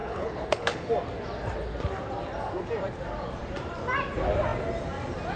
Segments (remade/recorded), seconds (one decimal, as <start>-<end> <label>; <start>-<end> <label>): 0.0-0.9 remade; 0.9-5.4 recorded